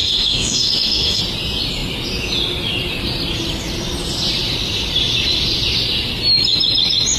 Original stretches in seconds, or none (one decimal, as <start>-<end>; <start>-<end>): 1.2-7.2